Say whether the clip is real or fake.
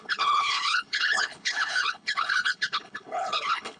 fake